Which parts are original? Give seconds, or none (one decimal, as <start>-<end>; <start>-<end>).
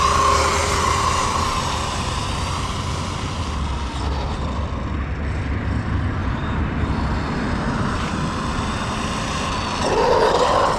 0.0-0.6; 2.3-6.2; 6.8-10.8